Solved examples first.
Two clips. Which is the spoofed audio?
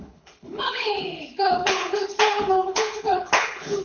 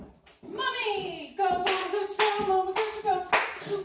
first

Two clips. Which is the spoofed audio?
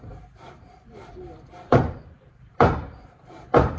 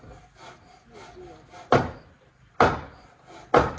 first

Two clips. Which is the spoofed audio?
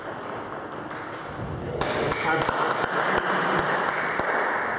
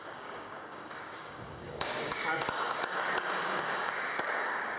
second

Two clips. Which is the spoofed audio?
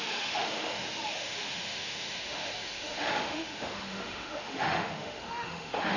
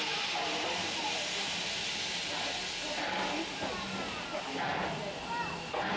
first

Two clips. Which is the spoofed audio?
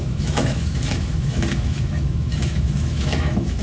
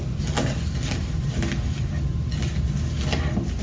first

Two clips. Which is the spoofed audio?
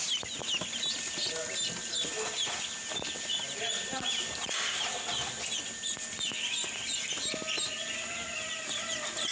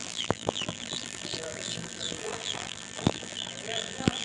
second